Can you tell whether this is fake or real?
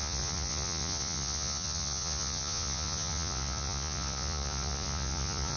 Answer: fake